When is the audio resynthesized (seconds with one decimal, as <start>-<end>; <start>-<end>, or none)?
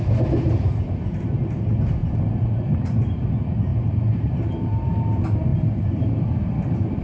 2.0-3.3; 3.7-4.9; 5.5-6.4